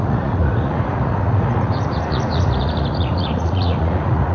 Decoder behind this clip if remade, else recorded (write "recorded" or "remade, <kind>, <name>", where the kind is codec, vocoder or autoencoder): remade, vocoder, Vocos